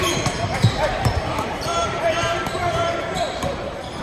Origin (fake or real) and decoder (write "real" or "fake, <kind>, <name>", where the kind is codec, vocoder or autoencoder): fake, vocoder, BigVGAN v2